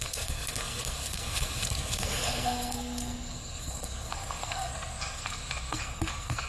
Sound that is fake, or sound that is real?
fake